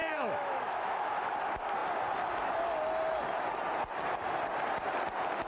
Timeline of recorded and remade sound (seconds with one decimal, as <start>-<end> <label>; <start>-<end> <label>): 0.0-1.1 remade; 1.1-5.5 recorded